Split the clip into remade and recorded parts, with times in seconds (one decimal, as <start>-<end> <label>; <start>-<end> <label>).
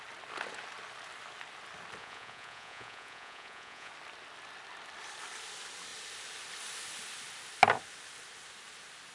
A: 0.0-2.0 recorded; 2.0-3.9 remade; 3.9-9.1 recorded